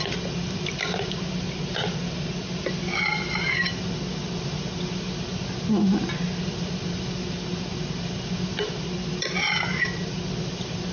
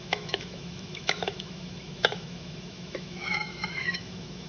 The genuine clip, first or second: first